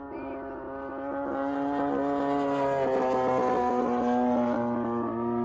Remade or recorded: recorded